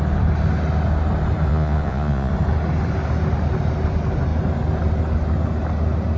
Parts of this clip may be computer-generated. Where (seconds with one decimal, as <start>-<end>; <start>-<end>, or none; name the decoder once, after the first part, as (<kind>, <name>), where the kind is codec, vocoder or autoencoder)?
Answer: 1.5-2.3 (vocoder, Vocos)